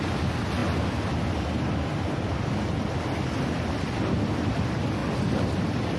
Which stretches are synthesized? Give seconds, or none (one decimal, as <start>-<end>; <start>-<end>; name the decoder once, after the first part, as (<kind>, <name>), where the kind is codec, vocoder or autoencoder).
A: none